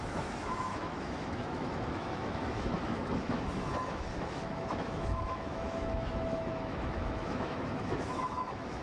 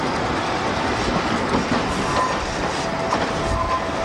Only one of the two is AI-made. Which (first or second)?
first